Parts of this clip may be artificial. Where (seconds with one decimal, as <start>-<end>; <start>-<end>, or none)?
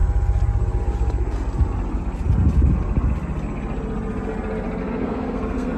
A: 4.8-5.8